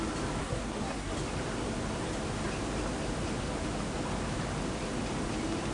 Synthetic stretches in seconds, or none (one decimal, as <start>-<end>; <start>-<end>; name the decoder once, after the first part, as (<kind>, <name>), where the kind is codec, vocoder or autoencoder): 0.4-1.1 (codec, SNAC)